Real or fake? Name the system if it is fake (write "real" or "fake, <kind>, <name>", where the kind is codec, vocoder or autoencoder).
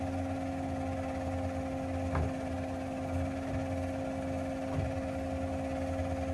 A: real